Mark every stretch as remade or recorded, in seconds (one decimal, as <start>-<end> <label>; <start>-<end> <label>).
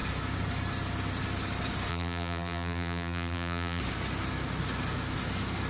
0.0-1.9 recorded; 1.9-3.8 remade; 3.8-5.7 recorded